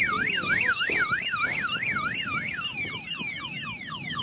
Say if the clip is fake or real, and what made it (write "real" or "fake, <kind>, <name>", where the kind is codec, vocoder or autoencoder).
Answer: real